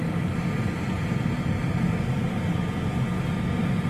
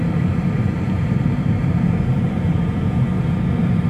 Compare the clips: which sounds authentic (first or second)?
first